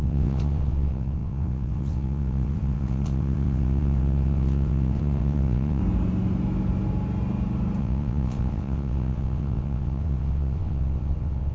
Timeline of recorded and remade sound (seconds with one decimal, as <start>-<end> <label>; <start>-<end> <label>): 0.0-5.8 remade; 5.8-7.8 recorded; 7.8-11.5 remade